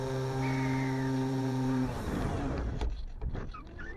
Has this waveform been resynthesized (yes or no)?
yes